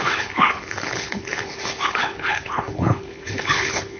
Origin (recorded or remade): remade